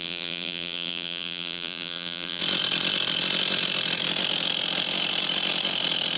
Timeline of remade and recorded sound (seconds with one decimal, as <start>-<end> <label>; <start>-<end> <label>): 0.0-2.4 remade; 2.4-6.2 recorded